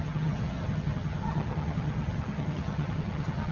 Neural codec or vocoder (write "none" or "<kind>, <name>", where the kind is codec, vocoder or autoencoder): vocoder, HiFi-GAN